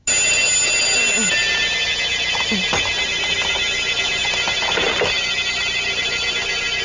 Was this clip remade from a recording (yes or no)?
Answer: no